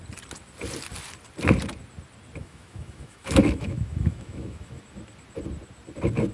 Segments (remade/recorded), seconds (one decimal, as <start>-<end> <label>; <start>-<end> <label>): 0.0-2.4 recorded; 2.4-4.8 remade; 4.8-6.3 recorded